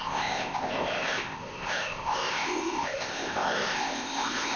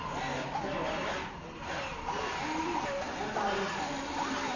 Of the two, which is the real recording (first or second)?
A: second